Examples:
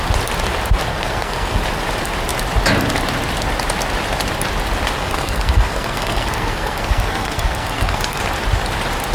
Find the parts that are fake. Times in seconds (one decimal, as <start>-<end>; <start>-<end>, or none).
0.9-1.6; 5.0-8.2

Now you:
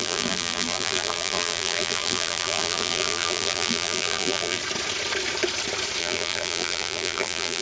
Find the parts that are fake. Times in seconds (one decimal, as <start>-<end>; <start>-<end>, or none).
0.0-4.6; 6.0-7.6

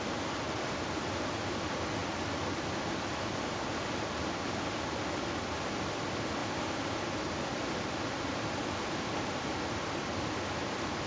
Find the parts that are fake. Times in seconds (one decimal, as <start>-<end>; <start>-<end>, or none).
none

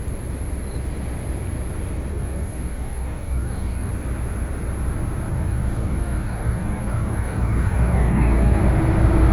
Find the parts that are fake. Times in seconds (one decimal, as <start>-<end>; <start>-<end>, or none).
2.1-3.9; 5.3-8.6

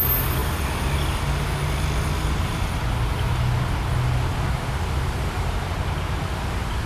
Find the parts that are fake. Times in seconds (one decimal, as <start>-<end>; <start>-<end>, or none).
none

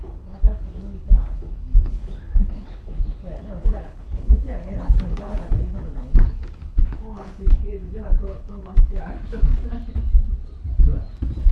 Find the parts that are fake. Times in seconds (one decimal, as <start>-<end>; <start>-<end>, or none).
0.0-9.5

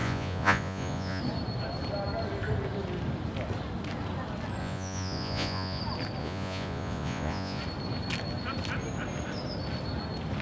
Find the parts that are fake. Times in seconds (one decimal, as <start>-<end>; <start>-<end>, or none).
0.0-1.2; 4.6-5.8; 6.2-7.6